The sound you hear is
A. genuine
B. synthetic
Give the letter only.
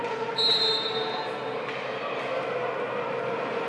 A